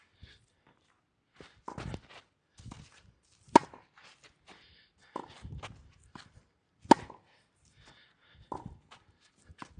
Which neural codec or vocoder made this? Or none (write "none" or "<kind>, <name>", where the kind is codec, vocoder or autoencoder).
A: none